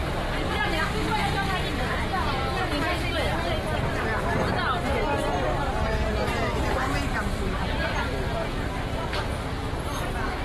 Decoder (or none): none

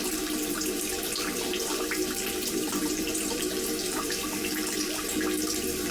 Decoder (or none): vocoder, BigVGAN v2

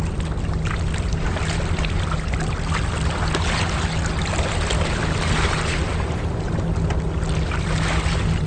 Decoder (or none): none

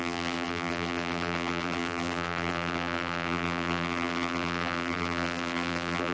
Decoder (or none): vocoder, BigVGAN v2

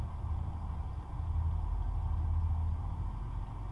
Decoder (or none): none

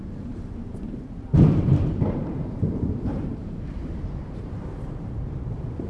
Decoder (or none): vocoder, BigVGAN v2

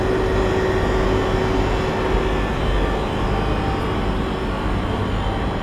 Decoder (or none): none